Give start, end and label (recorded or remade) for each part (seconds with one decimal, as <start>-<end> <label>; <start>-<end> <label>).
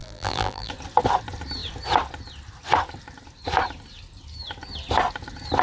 0.0-0.7 remade; 0.7-5.6 recorded